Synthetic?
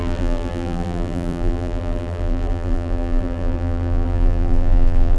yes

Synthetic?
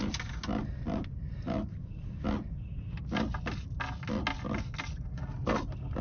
no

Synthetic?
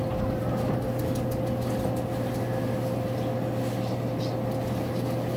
no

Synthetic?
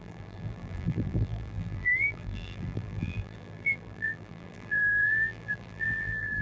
yes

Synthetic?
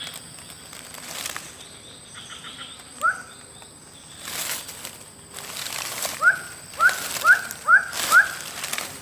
yes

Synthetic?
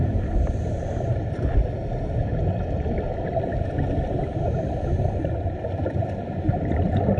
yes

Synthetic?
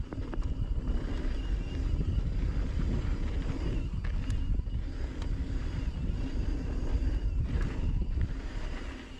no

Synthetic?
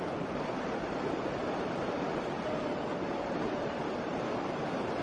yes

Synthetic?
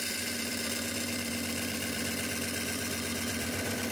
yes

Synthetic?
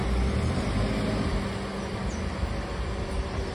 no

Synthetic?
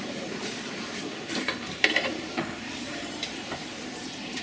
yes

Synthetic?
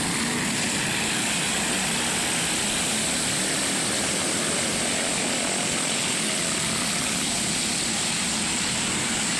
no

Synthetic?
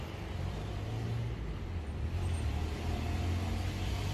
no